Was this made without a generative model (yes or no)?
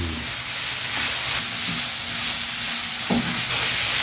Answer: yes